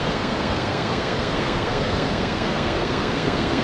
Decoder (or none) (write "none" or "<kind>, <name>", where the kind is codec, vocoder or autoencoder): codec, SNAC